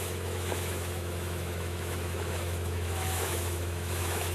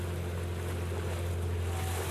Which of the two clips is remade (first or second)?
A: first